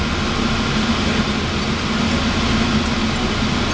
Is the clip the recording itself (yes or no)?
yes